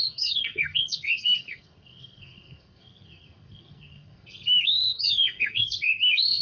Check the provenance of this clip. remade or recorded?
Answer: remade